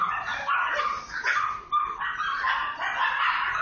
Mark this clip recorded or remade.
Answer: recorded